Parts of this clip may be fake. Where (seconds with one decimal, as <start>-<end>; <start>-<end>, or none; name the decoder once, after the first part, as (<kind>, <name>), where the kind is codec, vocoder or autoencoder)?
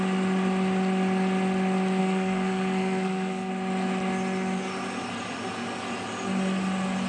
2.0-3.5 (codec, SNAC)